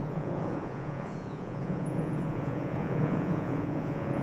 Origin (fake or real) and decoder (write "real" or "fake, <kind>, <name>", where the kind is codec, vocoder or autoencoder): fake, vocoder, Vocos